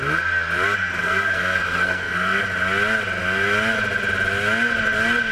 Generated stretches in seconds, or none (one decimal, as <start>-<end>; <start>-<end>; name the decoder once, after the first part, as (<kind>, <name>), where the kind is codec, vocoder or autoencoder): 1.0-2.4 (codec, SNAC)